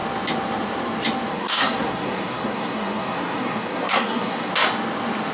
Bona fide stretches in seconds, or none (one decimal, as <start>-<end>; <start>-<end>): 0.0-1.3; 4.5-5.3